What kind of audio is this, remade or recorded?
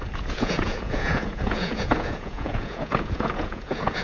remade